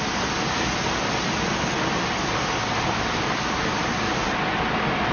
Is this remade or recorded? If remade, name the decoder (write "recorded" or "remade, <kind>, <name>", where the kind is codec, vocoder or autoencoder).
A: recorded